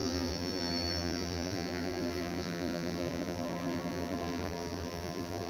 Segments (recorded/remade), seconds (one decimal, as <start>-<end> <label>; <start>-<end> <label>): 0.0-5.5 remade